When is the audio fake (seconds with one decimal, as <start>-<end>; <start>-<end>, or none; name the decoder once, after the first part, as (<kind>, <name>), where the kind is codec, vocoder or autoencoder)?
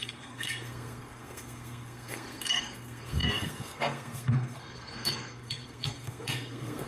0.0-6.9 (codec, SNAC)